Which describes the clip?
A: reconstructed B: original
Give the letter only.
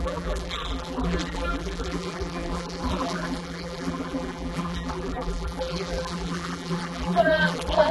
A